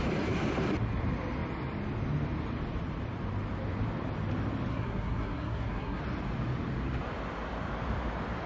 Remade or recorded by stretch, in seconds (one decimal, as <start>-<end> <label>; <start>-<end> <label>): 0.0-4.7 recorded; 4.7-6.0 remade; 6.0-8.5 recorded